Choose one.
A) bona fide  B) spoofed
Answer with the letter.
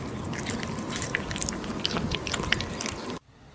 B